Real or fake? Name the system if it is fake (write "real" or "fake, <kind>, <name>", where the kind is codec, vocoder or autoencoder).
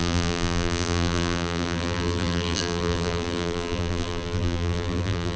fake, vocoder, BigVGAN v2